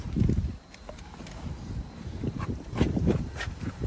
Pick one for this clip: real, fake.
fake